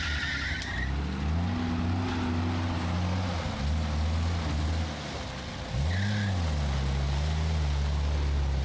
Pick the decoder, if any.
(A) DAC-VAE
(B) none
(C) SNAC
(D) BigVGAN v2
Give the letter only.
B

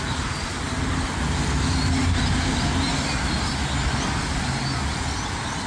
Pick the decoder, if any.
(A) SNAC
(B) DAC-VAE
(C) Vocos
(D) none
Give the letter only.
D